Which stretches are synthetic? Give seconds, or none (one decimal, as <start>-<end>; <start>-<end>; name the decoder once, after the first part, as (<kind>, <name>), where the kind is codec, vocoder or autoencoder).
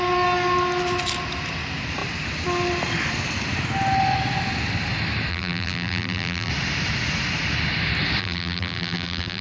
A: 5.3-6.5 (vocoder, BigVGAN v2); 8.2-9.4